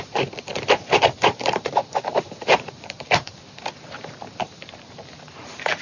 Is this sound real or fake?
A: fake